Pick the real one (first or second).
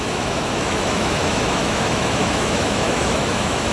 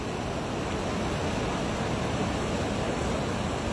second